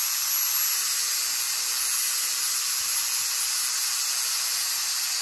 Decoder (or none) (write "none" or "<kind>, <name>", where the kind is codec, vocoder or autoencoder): none